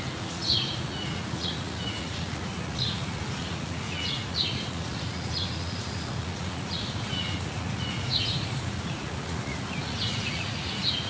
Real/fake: fake